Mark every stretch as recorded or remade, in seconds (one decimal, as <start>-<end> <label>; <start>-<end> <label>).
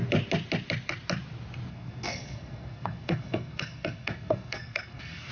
0.0-1.7 recorded; 1.7-5.3 remade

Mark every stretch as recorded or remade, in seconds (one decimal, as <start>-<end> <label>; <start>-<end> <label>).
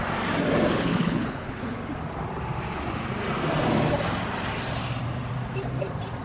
0.0-0.7 recorded; 0.7-1.6 remade; 1.6-6.2 recorded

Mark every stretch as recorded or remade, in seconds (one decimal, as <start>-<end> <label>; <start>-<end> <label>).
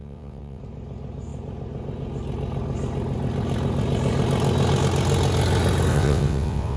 0.0-0.6 remade; 0.6-5.9 recorded; 5.9-6.8 remade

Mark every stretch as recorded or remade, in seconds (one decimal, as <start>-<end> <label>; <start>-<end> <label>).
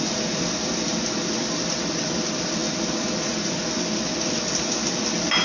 0.0-5.4 recorded